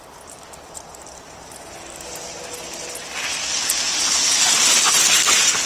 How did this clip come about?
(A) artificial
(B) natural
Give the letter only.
B